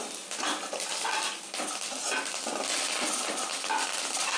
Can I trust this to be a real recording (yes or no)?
yes